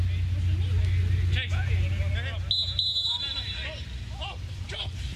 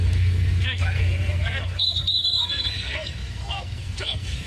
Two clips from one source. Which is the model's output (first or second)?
second